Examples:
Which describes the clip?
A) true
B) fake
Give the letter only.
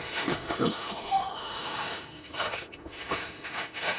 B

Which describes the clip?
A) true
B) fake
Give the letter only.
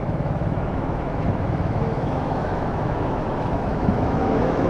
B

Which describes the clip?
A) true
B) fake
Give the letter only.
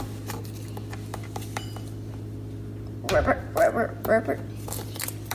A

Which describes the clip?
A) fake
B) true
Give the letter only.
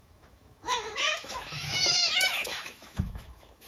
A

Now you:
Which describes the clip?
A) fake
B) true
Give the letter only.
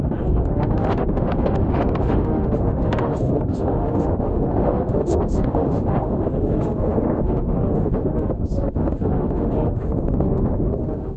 A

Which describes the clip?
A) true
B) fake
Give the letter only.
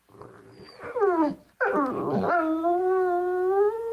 A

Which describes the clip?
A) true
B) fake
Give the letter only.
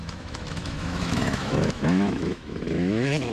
B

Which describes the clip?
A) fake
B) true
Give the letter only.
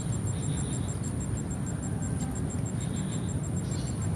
B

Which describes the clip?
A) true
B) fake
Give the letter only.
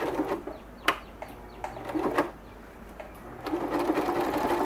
A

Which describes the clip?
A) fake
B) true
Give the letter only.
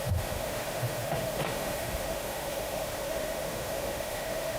A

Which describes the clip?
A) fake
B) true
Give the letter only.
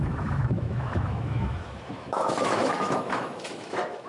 A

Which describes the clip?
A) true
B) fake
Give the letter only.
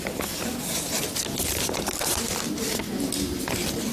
A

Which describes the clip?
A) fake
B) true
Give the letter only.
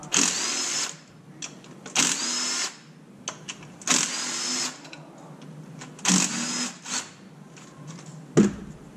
B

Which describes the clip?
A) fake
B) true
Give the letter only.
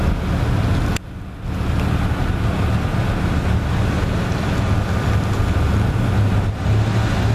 B